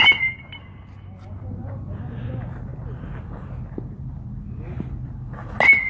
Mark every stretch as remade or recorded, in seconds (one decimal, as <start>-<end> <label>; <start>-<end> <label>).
0.0-5.9 recorded